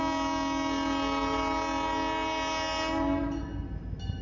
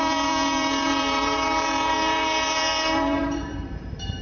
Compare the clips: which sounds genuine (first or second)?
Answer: first